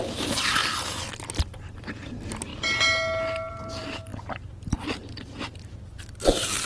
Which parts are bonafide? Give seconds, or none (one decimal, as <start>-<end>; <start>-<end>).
0.6-1.2; 2.5-3.5